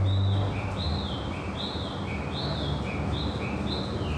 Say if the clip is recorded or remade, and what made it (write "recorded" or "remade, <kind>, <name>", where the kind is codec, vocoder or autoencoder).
recorded